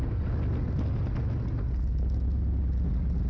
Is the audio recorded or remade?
recorded